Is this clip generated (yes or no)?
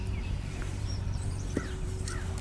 yes